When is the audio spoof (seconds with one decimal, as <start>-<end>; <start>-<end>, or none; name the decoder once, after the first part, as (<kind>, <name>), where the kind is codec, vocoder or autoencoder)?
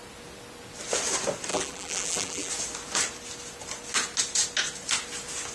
1.5-2.5 (vocoder, BigVGAN v2)